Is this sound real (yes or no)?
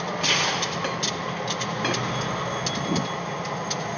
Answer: yes